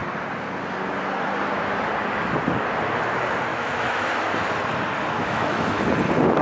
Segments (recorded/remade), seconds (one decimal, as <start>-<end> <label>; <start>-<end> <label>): 0.0-3.5 recorded; 3.5-4.1 remade; 4.1-5.2 recorded; 5.2-5.8 remade; 5.8-6.4 recorded